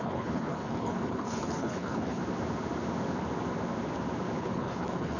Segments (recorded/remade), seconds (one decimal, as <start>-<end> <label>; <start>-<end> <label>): 0.0-2.2 remade; 2.2-4.4 recorded; 4.4-5.2 remade